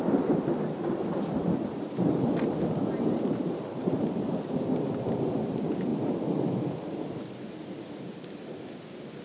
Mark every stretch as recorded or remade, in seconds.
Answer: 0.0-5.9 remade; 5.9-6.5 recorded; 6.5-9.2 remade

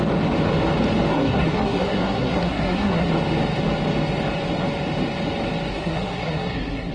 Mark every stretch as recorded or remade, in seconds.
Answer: 0.0-1.1 recorded; 1.1-3.1 remade; 3.1-5.7 recorded; 5.7-6.9 remade

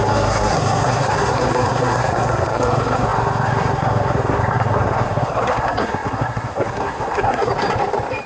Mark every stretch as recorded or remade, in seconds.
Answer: 0.0-7.5 remade; 7.5-8.3 recorded

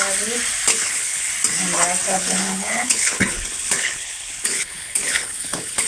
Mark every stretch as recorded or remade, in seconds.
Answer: 0.0-0.7 recorded; 0.7-1.3 remade; 1.3-2.1 recorded; 2.1-5.9 remade

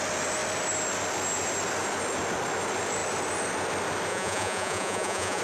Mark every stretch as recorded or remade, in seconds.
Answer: 0.0-4.1 recorded; 4.1-5.4 remade

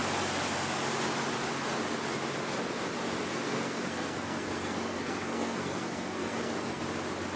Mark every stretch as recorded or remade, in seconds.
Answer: 0.0-3.3 recorded; 3.3-6.8 remade; 6.8-7.4 recorded

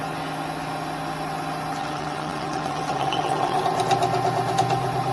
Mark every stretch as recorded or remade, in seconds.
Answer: 0.0-1.8 recorded; 1.8-3.6 remade; 3.6-5.1 recorded

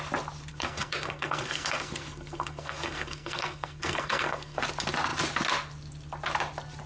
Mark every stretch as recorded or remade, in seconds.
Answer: 0.0-0.5 recorded; 0.5-4.6 remade; 4.6-6.9 recorded